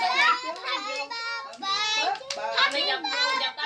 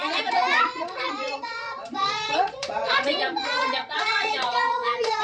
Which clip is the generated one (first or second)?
second